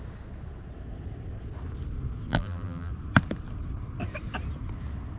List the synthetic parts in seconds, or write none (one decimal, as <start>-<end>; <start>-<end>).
2.3-2.9